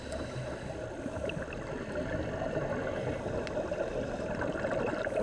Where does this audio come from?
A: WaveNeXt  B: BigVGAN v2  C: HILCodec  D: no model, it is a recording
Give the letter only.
D